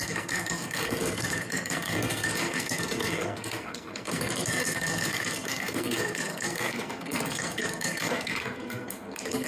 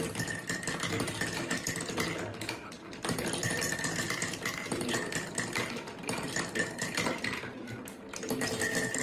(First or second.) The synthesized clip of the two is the first